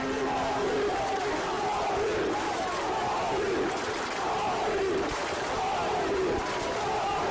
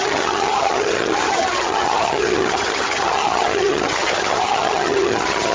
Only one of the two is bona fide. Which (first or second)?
first